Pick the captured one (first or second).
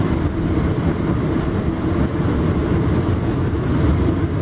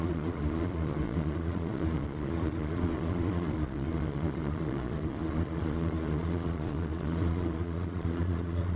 first